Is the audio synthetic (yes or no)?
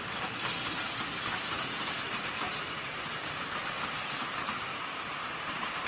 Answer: no